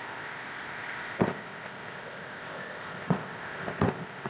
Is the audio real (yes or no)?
no